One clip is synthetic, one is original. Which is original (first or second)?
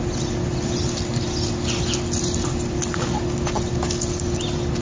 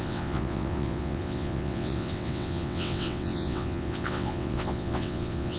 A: first